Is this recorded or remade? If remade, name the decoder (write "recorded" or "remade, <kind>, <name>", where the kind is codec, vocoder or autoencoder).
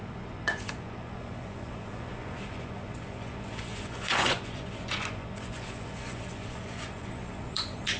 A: remade, vocoder, Vocos